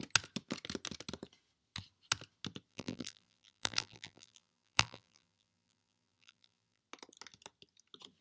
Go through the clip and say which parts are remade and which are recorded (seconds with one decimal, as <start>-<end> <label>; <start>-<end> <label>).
0.0-2.7 recorded; 2.7-6.8 remade; 6.8-8.2 recorded